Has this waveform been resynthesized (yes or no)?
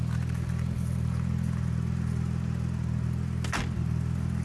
no